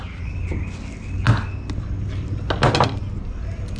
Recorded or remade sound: recorded